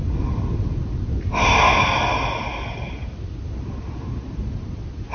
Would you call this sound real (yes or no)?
yes